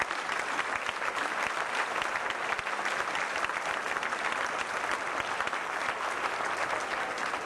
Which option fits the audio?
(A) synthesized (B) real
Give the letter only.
B